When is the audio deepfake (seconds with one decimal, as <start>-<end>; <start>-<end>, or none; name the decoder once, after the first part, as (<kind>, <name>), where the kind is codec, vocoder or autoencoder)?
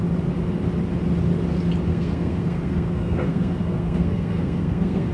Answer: 1.9-5.1 (codec, SNAC)